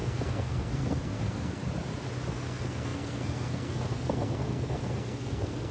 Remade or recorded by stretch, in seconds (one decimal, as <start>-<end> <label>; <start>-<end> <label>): 0.0-1.6 remade; 1.6-2.3 recorded; 2.3-5.7 remade